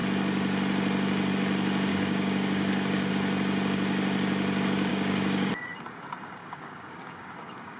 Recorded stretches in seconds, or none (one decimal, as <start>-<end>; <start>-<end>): 0.0-1.9; 3.1-4.9; 5.5-6.4